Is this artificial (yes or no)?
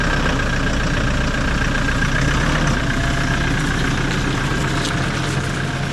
no